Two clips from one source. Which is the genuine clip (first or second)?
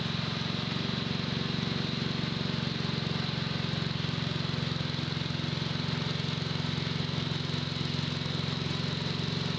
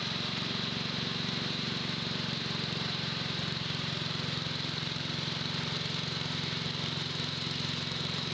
first